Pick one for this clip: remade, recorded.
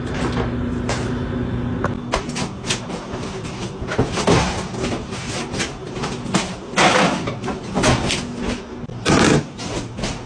recorded